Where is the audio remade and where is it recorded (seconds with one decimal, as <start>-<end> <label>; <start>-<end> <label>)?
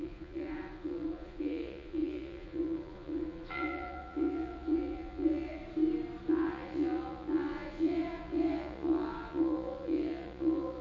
0.0-5.6 remade; 5.6-6.3 recorded; 6.3-10.8 remade